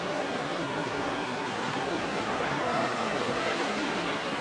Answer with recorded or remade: remade